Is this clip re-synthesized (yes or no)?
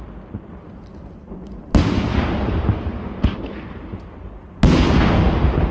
no